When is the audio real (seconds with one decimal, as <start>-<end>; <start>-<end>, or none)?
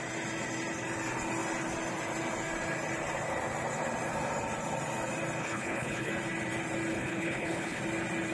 0.0-5.4; 6.1-6.9; 7.8-8.3